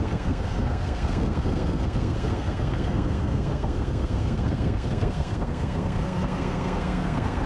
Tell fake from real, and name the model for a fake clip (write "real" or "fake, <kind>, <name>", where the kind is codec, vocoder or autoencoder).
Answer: fake, codec, SNAC